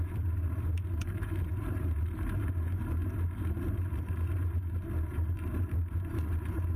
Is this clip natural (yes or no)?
no